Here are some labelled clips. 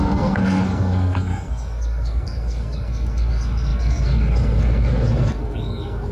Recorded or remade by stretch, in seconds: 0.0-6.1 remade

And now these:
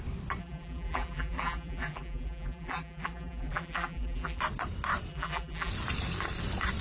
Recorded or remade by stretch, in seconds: 0.0-0.4 recorded; 0.4-4.4 remade; 4.4-5.1 recorded; 5.1-5.7 remade; 5.7-6.8 recorded

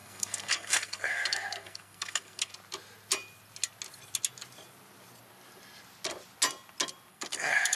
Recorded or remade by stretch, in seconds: 0.0-2.5 remade; 2.5-7.1 recorded; 7.1-7.8 remade

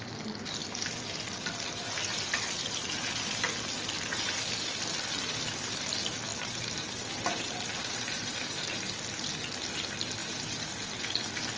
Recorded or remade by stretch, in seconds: 0.0-6.3 recorded; 6.3-9.3 remade; 9.3-10.2 recorded; 10.2-11.0 remade; 11.0-11.6 recorded

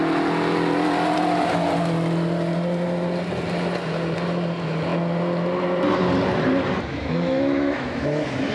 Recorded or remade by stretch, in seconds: 0.0-6.9 recorded; 6.9-8.5 remade

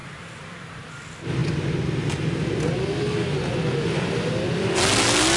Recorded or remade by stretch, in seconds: 0.0-0.9 remade; 0.9-5.4 recorded

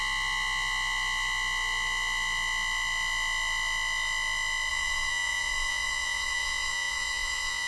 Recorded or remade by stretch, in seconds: 0.0-4.7 recorded; 4.7-7.7 remade

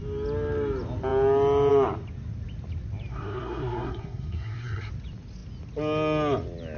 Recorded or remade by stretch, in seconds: 0.0-3.1 recorded; 3.1-4.9 remade; 4.9-6.8 recorded